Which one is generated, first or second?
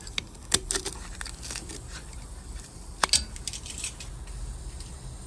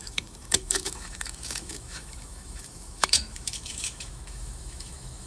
second